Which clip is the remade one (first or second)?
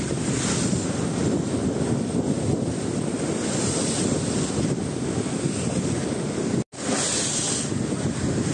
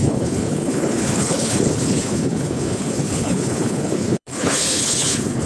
second